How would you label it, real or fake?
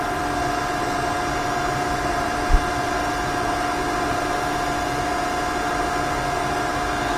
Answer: real